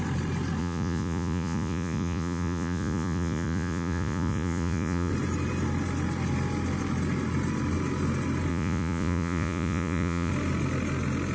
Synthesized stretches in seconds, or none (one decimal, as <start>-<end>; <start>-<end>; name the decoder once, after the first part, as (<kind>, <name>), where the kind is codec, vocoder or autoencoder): 0.6-5.1 (vocoder, Vocos); 8.5-10.3